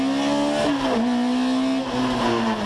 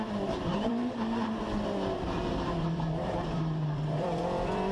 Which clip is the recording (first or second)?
first